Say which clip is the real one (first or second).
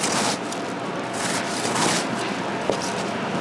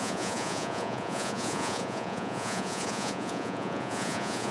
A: first